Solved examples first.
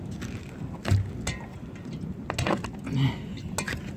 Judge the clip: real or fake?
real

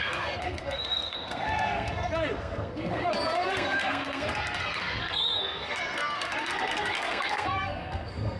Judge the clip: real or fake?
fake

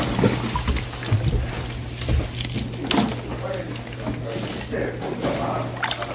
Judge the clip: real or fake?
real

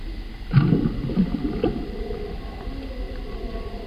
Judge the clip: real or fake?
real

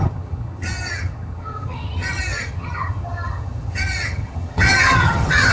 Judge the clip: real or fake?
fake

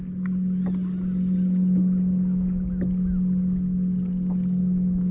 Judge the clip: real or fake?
real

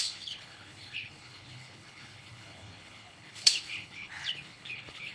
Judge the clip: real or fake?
fake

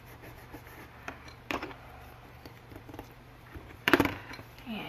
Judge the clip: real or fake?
fake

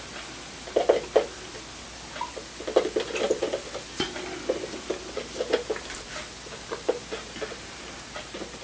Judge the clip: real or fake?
real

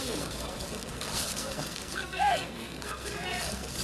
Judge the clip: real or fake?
fake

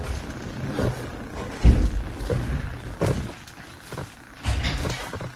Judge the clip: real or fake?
real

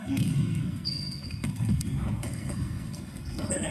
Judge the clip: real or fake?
fake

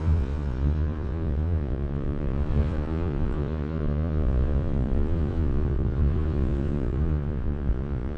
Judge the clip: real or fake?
fake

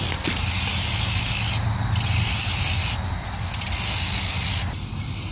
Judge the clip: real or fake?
real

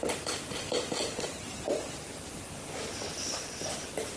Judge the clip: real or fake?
real